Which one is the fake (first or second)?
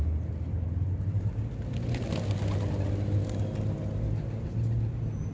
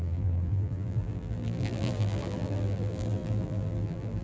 second